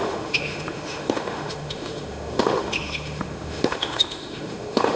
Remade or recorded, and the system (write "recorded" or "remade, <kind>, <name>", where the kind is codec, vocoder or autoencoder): remade, autoencoder, DAC-VAE